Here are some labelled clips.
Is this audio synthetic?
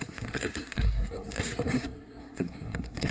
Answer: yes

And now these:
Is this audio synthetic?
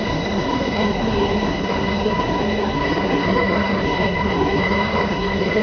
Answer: yes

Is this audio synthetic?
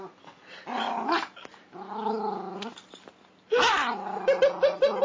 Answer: no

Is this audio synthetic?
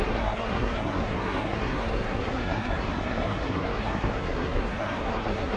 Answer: yes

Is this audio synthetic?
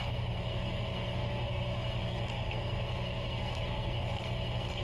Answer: yes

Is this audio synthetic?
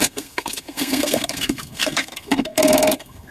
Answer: yes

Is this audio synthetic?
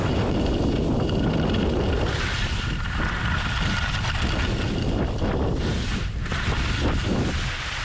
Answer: no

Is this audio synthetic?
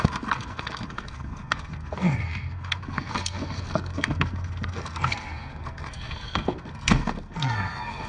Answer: yes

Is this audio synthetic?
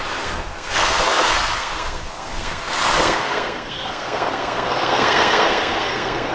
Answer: yes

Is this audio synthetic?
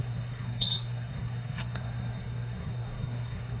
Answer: yes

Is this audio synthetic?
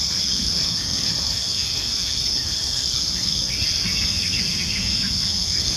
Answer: yes